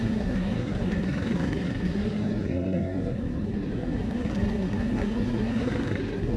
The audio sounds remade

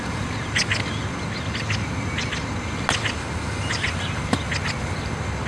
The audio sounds recorded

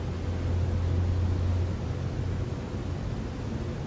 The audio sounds recorded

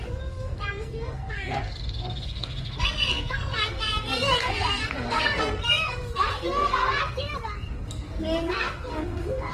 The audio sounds remade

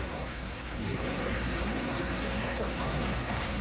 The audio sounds remade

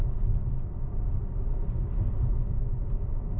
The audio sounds recorded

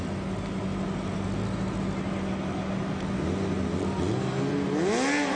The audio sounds recorded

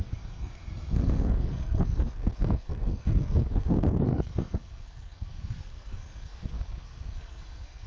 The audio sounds remade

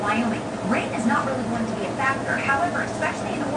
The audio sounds recorded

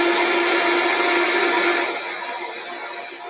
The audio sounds recorded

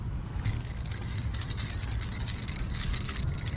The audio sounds recorded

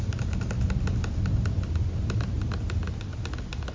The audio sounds recorded